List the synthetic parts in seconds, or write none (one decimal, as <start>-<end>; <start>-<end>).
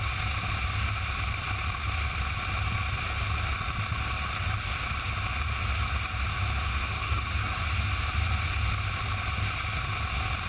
7.0-7.6